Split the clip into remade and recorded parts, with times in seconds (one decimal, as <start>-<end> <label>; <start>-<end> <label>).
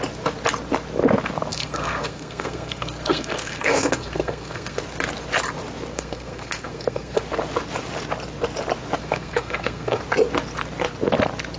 0.0-1.5 recorded; 1.5-4.8 remade; 4.8-5.9 recorded; 5.9-7.2 remade; 7.2-9.0 recorded; 9.0-10.0 remade; 10.0-11.6 recorded